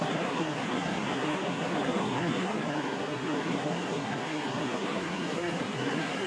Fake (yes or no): yes